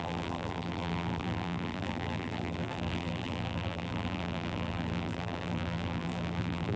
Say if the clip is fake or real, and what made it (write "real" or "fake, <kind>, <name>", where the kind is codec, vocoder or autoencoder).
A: fake, vocoder, BigVGAN v2